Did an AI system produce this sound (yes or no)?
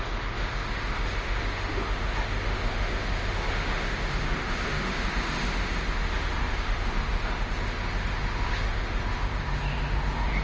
yes